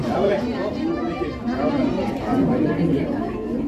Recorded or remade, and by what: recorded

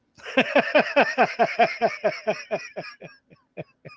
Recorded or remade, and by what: recorded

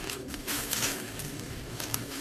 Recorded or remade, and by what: remade, codec, DAC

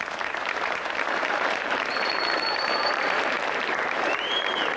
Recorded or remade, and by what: remade, vocoder, BigVGAN v2